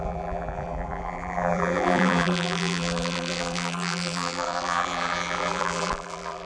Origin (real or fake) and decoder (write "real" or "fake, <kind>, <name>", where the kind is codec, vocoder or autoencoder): fake, vocoder, BigVGAN v2